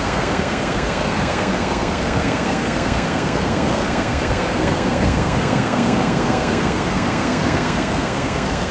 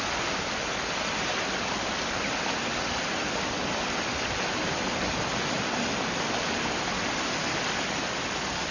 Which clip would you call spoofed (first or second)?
first